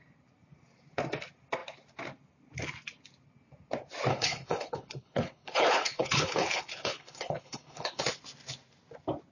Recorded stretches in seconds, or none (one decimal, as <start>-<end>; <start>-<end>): 0.0-4.1; 8.0-9.3